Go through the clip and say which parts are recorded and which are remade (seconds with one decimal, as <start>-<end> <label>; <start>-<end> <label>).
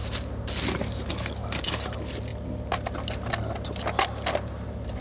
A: 0.0-5.0 recorded